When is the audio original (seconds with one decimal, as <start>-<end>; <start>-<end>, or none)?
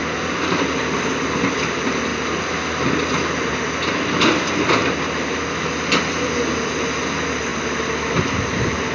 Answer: 0.0-8.9